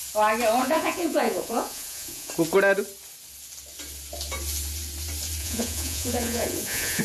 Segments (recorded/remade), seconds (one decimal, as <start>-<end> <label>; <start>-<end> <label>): 0.0-0.6 recorded; 0.6-2.3 remade; 2.3-5.4 recorded; 5.4-7.0 remade